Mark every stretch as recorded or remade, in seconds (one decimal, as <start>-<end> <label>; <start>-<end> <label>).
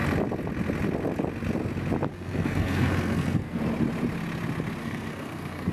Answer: 0.0-2.1 recorded; 2.1-3.6 remade; 3.6-4.8 recorded; 4.8-5.7 remade